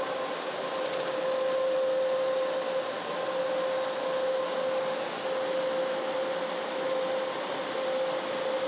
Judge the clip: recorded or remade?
recorded